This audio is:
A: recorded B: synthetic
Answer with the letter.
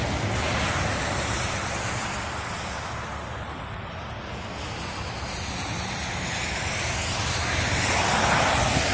A